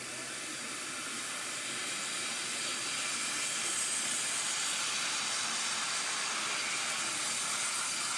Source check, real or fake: real